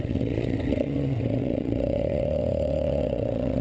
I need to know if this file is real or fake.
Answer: fake